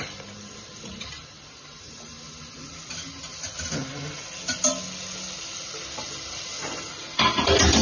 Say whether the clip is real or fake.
real